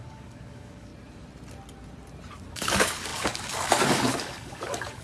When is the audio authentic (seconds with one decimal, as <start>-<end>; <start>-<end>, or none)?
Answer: 0.9-2.5